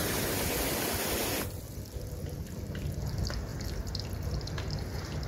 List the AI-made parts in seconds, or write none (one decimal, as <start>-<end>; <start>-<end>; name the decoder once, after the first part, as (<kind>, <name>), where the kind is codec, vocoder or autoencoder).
none